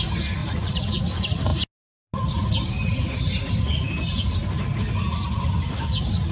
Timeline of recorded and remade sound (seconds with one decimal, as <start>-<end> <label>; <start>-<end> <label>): 0.0-0.4 recorded; 0.4-1.0 remade; 1.0-6.3 recorded